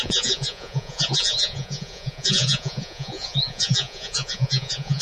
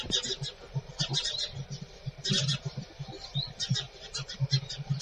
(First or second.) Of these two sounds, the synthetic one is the first